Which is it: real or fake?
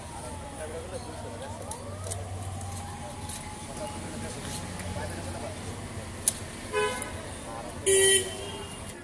real